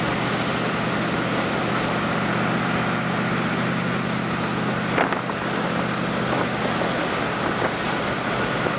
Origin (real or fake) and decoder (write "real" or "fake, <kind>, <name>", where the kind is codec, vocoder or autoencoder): real